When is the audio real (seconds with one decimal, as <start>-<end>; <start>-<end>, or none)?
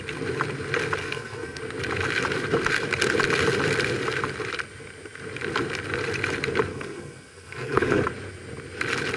0.0-1.0; 1.6-6.7; 8.0-9.2